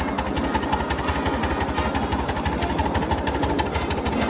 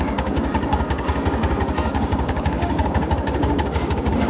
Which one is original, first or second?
first